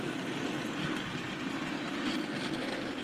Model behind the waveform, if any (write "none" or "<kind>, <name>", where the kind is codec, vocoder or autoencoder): none